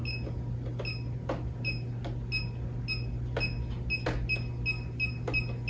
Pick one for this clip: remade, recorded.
recorded